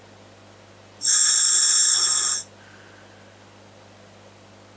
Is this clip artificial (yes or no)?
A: no